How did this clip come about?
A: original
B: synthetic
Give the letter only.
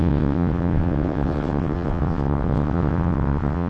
B